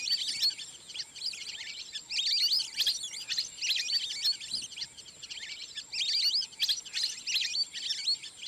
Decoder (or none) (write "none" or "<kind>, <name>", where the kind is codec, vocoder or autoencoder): none